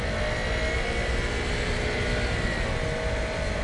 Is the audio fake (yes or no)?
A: no